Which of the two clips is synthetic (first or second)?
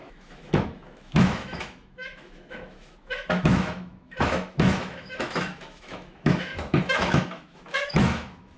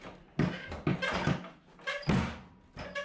first